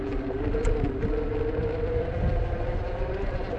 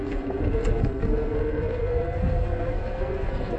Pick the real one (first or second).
first